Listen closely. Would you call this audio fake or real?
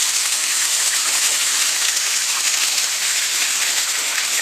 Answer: fake